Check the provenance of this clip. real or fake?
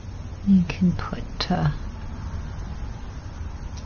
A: real